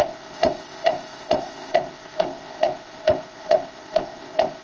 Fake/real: fake